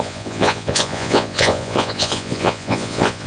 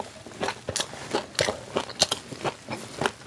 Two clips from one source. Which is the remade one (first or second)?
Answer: first